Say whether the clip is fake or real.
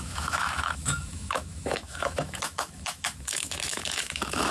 fake